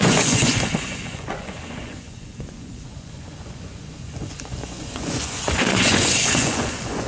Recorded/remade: remade